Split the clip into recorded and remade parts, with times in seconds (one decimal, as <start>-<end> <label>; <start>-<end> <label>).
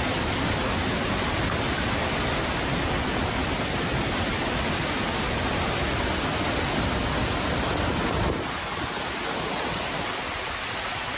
0.0-11.2 recorded